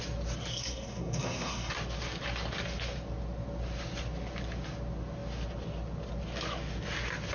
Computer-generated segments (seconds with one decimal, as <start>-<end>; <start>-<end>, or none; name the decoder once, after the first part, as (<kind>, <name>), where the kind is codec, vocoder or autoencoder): 0.5-1.7 (codec, SNAC)